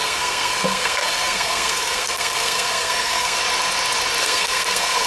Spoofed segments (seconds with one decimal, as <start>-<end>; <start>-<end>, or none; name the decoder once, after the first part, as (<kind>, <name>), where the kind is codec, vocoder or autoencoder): 0.0-3.4 (codec, SNAC); 4.2-5.1